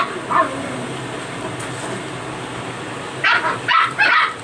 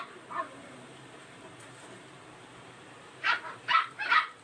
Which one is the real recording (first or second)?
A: first